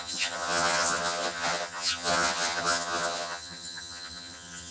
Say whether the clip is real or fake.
fake